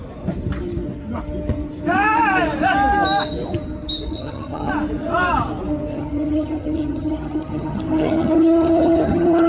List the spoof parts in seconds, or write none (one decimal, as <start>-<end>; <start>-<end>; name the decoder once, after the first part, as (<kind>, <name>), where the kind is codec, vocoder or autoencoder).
4.1-4.7 (vocoder, HiFi-GAN); 5.9-9.5